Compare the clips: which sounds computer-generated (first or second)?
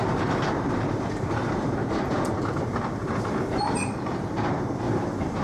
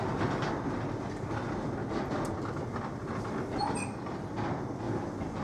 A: first